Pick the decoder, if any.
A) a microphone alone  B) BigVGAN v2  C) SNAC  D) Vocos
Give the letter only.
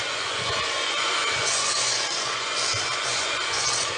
D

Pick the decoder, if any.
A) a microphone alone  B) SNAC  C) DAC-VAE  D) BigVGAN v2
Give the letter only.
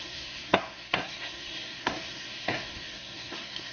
B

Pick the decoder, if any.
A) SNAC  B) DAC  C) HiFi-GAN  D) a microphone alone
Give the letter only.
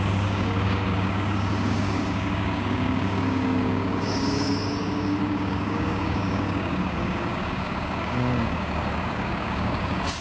B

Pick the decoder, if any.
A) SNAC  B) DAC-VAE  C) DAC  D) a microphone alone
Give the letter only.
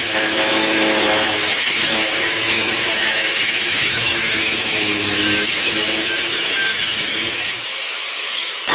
B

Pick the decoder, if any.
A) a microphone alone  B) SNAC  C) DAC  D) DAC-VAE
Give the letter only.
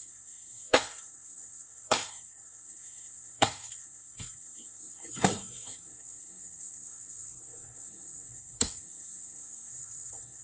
B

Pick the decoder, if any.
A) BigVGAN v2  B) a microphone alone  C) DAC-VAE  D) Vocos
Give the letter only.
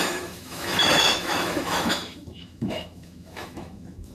C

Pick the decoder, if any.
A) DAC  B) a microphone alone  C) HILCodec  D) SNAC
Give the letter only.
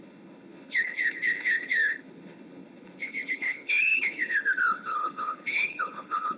C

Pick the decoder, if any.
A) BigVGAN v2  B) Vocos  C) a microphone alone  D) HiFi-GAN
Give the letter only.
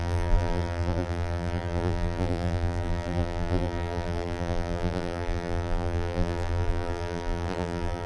A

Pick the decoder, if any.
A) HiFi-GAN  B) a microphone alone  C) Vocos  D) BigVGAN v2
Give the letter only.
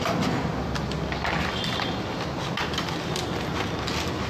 B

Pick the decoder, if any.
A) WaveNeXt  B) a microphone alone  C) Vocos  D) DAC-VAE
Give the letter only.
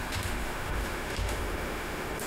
D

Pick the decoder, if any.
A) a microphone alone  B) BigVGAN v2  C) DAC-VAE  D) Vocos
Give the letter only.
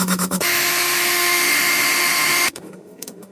C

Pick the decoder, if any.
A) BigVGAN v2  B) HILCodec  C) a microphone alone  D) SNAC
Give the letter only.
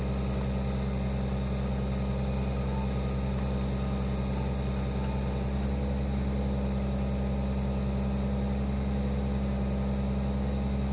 C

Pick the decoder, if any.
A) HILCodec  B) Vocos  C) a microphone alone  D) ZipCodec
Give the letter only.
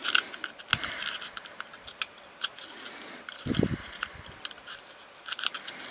C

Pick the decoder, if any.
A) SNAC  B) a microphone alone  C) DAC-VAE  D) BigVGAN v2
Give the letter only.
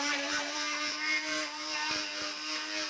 D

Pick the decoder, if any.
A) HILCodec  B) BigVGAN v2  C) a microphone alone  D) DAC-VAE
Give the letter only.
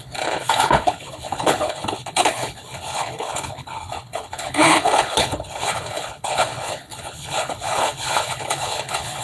A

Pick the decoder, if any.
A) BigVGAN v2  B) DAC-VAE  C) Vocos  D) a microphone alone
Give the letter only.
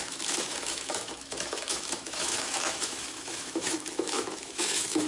B